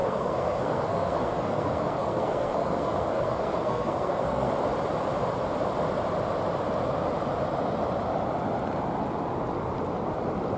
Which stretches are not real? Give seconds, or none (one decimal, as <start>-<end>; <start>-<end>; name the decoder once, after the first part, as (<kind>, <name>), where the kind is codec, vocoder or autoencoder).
0.0-4.5 (codec, SNAC)